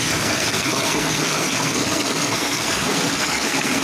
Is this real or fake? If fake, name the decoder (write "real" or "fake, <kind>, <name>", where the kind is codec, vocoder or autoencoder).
fake, codec, SNAC